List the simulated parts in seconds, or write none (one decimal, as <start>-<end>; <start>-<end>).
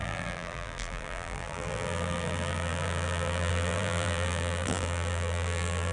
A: 0.0-5.9